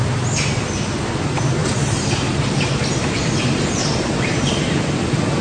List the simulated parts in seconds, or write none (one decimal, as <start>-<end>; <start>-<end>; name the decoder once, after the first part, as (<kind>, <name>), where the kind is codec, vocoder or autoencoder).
1.6-4.8 (vocoder, BigVGAN v2)